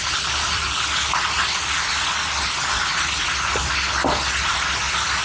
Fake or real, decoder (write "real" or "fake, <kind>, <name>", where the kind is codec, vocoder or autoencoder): real